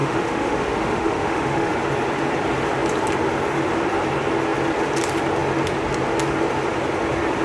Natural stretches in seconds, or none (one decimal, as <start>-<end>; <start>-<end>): 1.7-7.4